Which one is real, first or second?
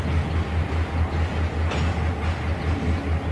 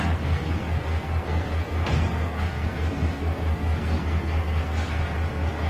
first